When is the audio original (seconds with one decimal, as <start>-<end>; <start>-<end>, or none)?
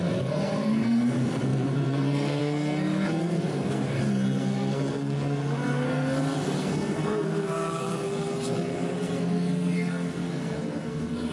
none